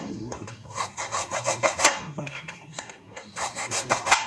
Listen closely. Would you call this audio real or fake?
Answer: fake